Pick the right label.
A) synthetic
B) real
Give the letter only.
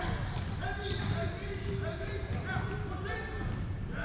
B